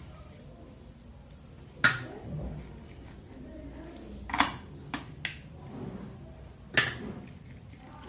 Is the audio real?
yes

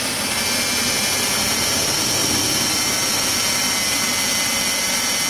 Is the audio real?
yes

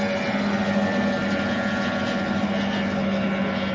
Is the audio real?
yes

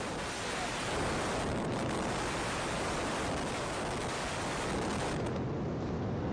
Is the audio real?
yes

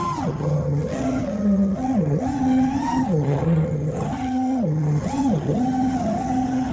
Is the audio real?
no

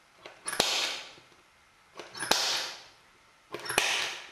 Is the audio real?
yes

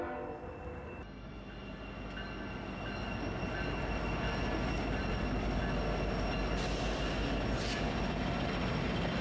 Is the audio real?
yes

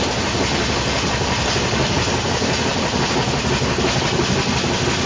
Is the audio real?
yes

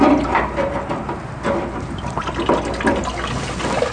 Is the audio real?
yes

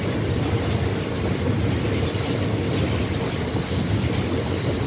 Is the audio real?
yes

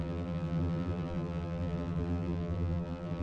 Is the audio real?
no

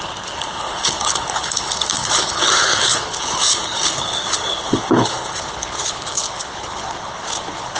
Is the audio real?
no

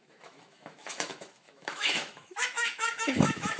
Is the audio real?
no